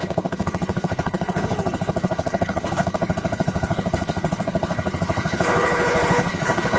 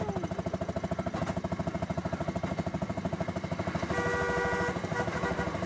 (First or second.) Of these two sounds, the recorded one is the second